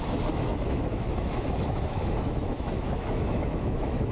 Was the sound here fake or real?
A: fake